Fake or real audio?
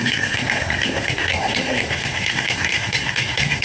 fake